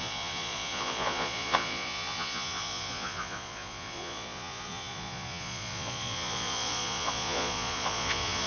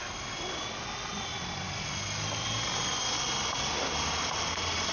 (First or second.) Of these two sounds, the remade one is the first